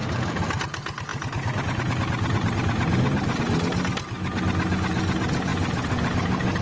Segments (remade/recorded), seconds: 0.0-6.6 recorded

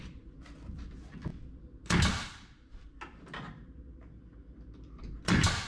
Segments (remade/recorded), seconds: 0.0-5.7 recorded

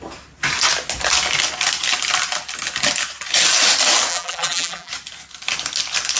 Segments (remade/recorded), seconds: 0.0-4.1 recorded; 4.1-4.9 remade; 4.9-6.2 recorded

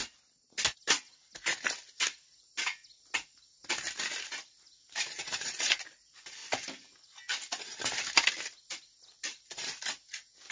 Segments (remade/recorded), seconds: 0.0-5.2 recorded; 5.2-5.7 remade; 5.7-10.5 recorded

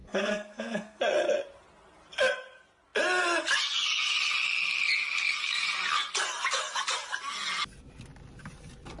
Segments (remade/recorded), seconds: 0.0-1.0 remade; 1.0-9.0 recorded